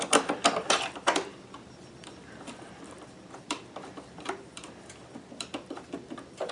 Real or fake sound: fake